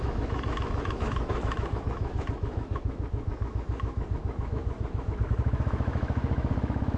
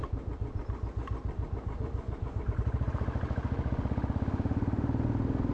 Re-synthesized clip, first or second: first